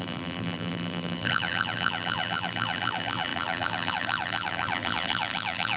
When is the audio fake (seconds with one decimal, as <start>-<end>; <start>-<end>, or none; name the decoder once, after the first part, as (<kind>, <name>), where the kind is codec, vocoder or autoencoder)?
0.0-5.8 (vocoder, BigVGAN v2)